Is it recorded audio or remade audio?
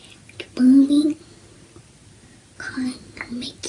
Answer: recorded